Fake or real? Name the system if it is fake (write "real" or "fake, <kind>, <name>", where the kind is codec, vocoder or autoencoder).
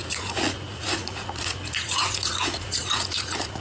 fake, vocoder, Vocos